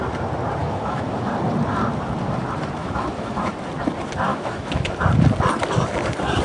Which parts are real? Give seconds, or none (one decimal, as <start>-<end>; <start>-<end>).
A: 0.0-0.6; 1.3-2.8; 3.5-4.3; 4.9-6.4

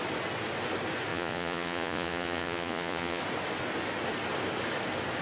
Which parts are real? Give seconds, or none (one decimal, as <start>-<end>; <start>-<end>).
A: 0.0-1.1; 3.2-5.2